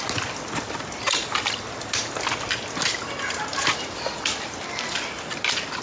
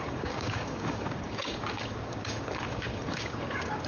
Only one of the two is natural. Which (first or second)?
first